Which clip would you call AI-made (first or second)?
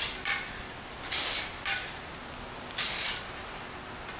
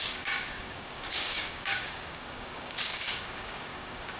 second